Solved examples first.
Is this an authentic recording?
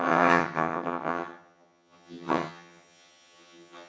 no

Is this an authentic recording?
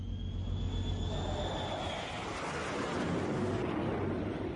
yes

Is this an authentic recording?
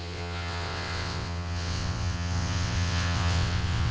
no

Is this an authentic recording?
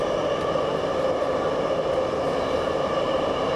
yes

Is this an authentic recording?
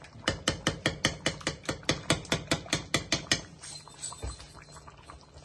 yes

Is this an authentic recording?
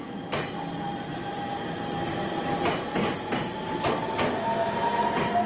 yes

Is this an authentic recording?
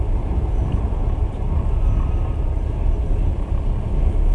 yes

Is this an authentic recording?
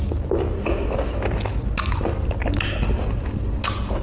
yes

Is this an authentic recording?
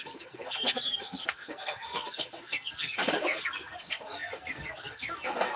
no